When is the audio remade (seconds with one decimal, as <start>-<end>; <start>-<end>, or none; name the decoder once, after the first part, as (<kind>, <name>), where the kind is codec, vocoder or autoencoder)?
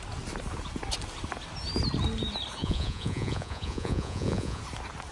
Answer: 2.6-4.6 (vocoder, Vocos)